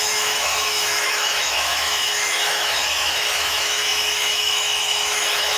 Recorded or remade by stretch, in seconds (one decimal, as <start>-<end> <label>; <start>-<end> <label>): 0.0-5.6 remade